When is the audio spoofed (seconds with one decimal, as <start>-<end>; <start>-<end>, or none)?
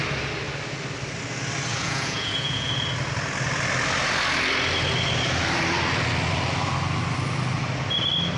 1.7-2.7